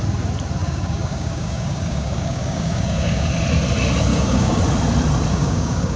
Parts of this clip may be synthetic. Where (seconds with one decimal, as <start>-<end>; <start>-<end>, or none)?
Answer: 0.6-3.3; 4.1-4.6; 5.3-6.0